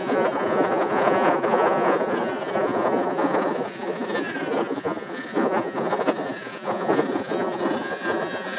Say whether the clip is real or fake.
fake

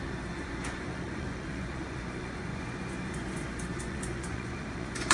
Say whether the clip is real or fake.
fake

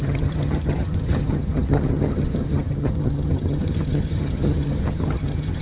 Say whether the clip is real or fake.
fake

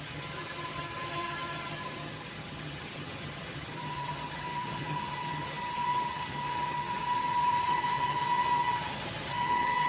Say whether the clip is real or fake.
fake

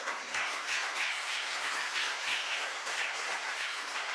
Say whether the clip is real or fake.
fake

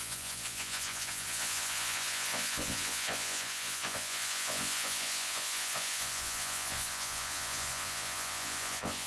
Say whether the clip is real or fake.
fake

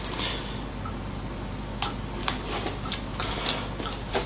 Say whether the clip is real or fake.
real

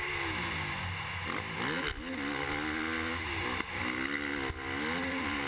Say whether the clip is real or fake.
real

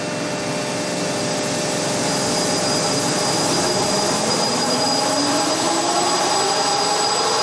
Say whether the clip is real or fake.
real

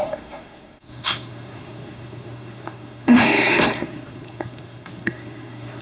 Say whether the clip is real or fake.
fake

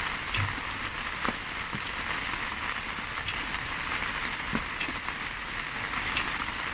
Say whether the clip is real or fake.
real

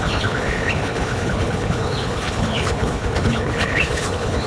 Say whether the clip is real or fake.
fake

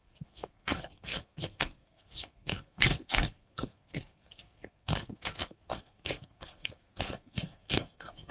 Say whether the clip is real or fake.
fake